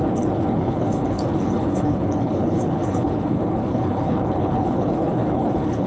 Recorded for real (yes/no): no